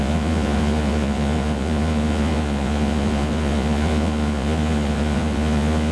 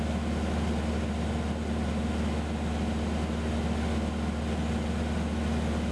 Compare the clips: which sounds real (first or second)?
second